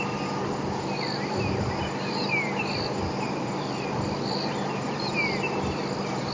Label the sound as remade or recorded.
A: recorded